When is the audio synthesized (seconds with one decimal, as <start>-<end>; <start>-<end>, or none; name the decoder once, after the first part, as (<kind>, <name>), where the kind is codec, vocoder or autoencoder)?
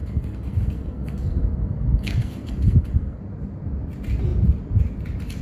0.0-3.2 (codec, SNAC)